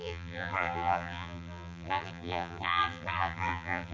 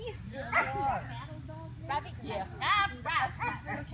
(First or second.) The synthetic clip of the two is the first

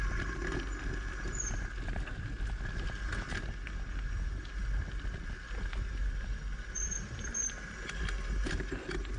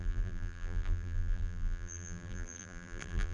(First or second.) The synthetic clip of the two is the second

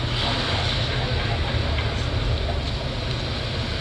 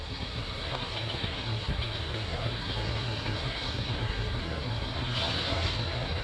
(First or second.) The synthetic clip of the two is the second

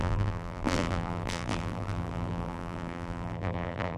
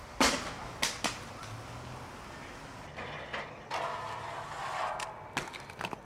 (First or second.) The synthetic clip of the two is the first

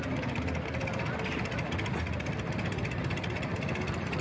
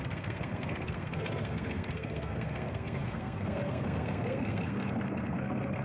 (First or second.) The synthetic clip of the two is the second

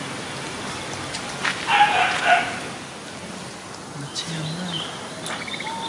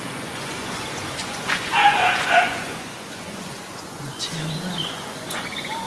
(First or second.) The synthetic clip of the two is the second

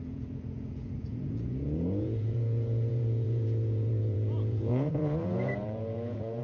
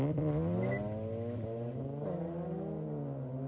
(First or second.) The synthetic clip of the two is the first